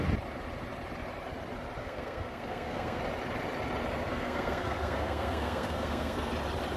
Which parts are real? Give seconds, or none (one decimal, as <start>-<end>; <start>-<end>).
0.0-1.8; 3.0-4.1; 6.3-6.8